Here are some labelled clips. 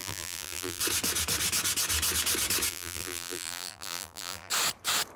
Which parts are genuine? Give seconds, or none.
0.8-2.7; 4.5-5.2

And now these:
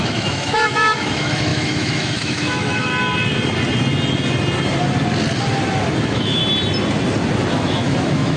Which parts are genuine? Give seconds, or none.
2.9-6.0; 6.4-7.5

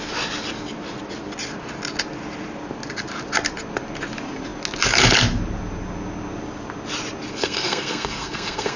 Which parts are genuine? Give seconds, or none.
0.0-7.3